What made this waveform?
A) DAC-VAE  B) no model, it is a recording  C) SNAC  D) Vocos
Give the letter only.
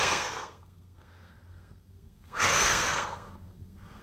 C